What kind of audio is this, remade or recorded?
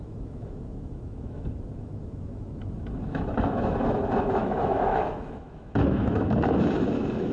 remade